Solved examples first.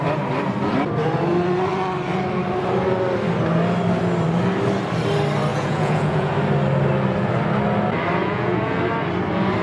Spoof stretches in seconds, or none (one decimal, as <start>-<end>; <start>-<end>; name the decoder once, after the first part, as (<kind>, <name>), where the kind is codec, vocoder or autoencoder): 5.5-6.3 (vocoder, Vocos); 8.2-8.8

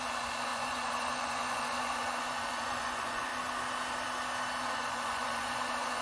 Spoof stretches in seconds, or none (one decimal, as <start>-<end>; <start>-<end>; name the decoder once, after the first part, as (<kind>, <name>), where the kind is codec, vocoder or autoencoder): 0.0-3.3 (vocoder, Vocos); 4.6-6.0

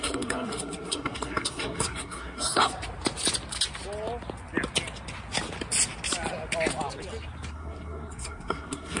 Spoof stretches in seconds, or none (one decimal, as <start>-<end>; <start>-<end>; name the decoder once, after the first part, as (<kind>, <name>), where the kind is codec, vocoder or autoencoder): 0.0-2.7 (codec, SNAC); 7.5-9.0

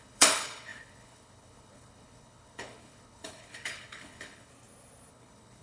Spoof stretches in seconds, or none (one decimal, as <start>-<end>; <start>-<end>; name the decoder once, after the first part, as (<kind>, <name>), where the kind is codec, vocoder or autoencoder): 0.0-4.5 (codec, HILCodec); 5.1-5.6